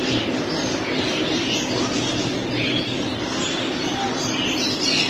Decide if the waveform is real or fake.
real